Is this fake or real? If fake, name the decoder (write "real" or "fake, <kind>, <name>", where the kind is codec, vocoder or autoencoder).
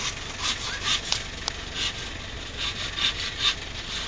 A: real